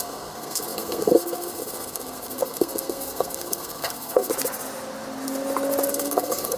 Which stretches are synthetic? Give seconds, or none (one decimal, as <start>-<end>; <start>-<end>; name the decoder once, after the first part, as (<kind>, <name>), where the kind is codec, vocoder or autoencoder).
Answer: 0.0-4.3 (codec, SNAC); 5.9-6.6